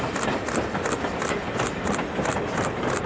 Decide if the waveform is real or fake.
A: real